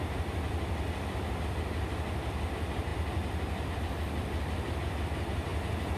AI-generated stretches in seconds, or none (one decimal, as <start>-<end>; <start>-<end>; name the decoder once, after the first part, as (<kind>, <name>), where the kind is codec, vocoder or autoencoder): none